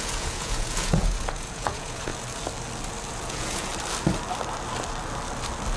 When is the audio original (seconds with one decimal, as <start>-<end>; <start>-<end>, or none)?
2.1-3.1; 3.7-5.8